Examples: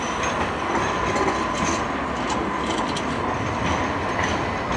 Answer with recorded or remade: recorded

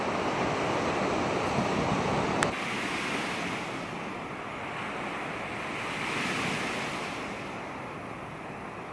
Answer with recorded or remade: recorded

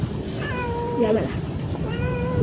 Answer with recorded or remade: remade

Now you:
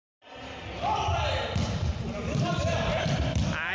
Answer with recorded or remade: remade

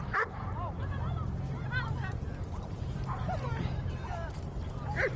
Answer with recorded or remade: remade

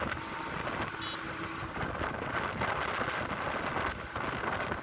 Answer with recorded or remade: recorded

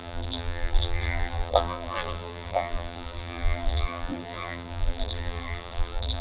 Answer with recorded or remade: remade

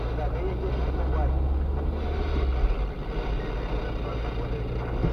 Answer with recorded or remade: recorded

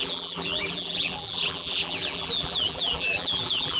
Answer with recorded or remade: remade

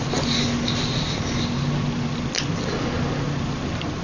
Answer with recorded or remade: recorded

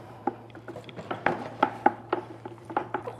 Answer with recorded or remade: remade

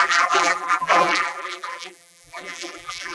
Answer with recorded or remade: remade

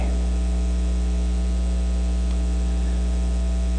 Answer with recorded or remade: recorded